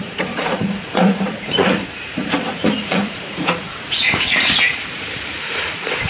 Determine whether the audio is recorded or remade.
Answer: remade